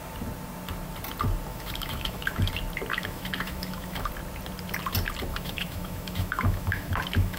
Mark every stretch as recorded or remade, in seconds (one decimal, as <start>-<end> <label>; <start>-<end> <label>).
0.0-1.5 recorded; 1.5-2.5 remade; 2.5-2.9 recorded; 2.9-4.1 remade; 4.1-5.3 recorded; 5.3-7.4 remade